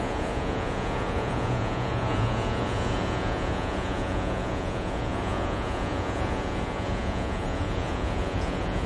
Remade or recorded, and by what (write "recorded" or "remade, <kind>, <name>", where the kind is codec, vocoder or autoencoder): remade, vocoder, Vocos